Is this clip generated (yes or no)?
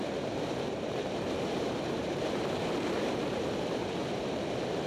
yes